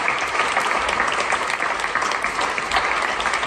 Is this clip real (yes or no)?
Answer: yes